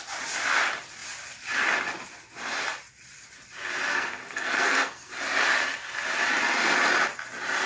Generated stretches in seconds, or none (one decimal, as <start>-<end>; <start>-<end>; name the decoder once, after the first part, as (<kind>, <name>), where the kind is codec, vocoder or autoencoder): 3.9-5.1 (codec, SNAC)